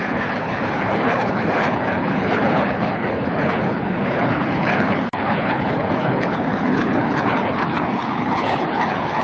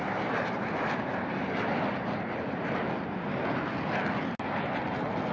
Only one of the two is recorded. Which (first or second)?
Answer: second